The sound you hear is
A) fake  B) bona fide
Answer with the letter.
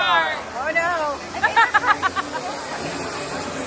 B